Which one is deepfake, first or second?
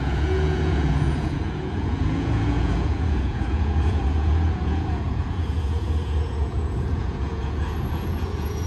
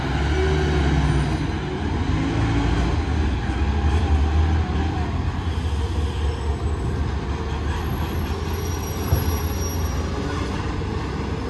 first